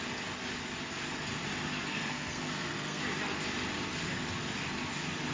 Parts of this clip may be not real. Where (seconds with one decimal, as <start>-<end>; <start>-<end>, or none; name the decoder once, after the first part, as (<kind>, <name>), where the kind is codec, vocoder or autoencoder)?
1.9-3.0 (codec, SNAC)